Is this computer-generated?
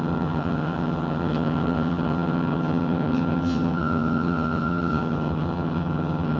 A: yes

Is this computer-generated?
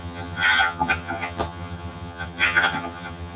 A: yes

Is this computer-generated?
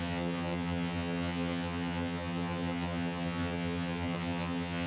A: yes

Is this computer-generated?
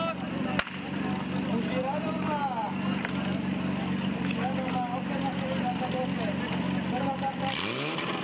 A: no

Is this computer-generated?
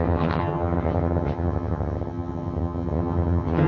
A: yes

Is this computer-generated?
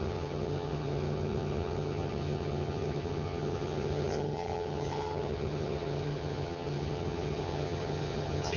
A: yes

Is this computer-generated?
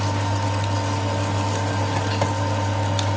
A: no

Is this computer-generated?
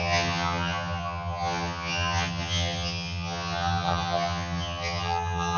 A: yes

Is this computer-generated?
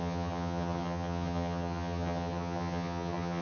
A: yes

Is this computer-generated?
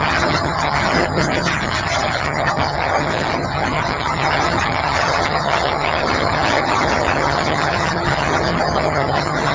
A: yes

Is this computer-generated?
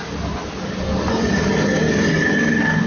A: no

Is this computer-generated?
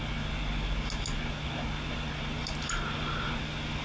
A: no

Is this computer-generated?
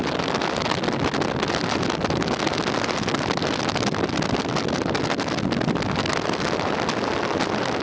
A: no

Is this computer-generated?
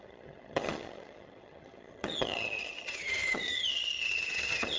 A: yes